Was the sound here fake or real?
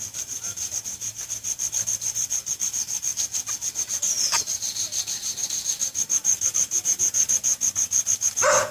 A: real